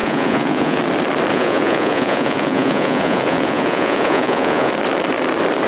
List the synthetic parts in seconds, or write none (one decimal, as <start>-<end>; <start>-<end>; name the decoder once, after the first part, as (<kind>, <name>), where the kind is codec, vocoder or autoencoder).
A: 0.0-0.8 (vocoder, Vocos); 1.3-4.7